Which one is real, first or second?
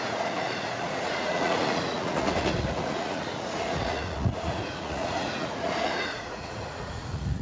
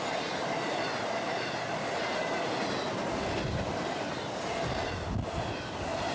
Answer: second